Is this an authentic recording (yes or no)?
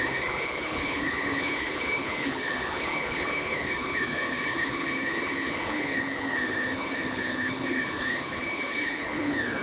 no